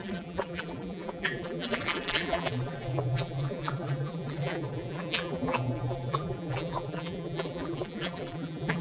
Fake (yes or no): yes